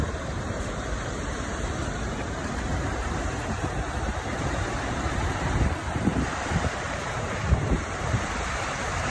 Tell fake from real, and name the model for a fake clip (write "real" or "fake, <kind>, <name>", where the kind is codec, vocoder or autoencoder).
fake, vocoder, BigVGAN v2